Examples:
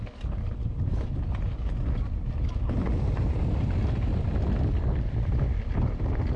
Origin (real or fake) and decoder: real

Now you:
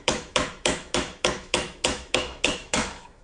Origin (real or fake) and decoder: fake, autoencoder, DAC-VAE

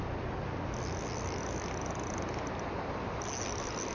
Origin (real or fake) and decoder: real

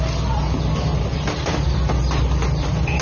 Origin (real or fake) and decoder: real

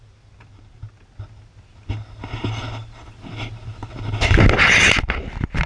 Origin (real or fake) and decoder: real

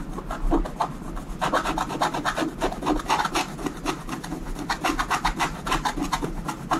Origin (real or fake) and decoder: real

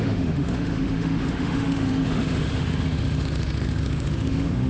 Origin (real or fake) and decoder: fake, autoencoder, DAC-VAE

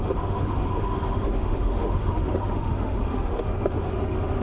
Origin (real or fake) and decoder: fake, autoencoder, DAC-VAE